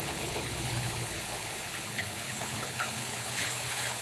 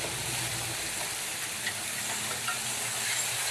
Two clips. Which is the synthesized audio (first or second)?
first